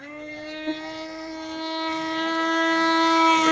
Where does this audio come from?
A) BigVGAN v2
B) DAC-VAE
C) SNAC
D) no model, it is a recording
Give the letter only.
C